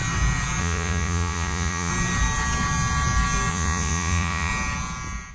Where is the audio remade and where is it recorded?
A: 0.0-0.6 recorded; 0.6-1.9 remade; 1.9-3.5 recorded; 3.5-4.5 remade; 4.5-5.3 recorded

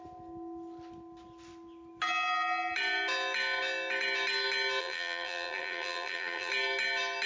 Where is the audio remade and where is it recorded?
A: 0.0-4.8 recorded; 4.8-6.5 remade; 6.5-7.3 recorded

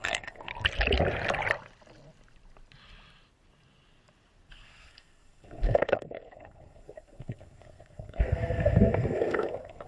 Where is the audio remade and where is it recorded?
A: 0.0-0.5 remade; 0.5-4.5 recorded; 4.5-9.9 remade

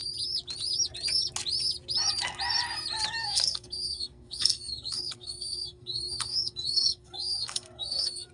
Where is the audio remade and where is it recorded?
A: 0.0-3.2 recorded; 3.2-8.3 remade

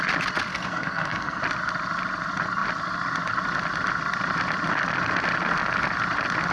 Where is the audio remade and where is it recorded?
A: 0.0-0.5 recorded; 0.5-1.4 remade; 1.4-6.5 recorded